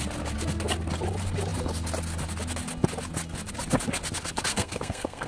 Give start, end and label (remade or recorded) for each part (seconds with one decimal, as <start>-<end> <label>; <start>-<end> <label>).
0.0-4.5 recorded; 4.5-5.3 remade

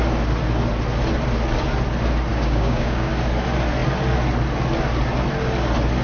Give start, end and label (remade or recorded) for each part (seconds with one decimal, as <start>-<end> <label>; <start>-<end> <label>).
0.0-2.3 recorded; 2.3-3.1 remade; 3.1-6.0 recorded

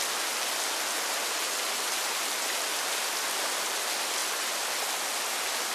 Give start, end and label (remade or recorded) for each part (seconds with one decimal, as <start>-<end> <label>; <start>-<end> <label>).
0.0-5.7 recorded

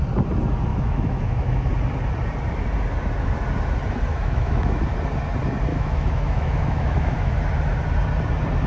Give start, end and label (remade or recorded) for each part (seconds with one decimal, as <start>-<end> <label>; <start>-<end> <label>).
0.0-0.7 recorded; 0.7-1.7 remade; 1.7-4.1 recorded; 4.1-4.8 remade; 4.8-5.7 recorded; 5.7-7.3 remade; 7.3-8.7 recorded